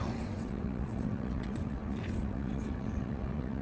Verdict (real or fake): fake